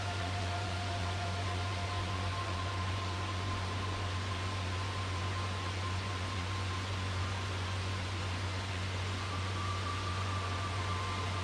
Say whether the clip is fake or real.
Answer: fake